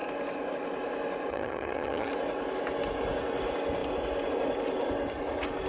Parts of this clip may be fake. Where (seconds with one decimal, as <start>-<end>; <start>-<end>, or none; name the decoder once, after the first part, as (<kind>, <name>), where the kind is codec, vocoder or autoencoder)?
1.3-2.1 (vocoder, HiFi-GAN)